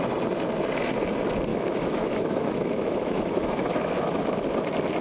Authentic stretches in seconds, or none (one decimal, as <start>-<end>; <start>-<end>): 0.0-1.5; 4.5-5.0